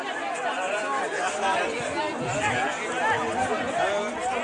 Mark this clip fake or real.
real